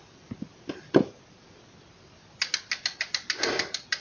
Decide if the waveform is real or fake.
real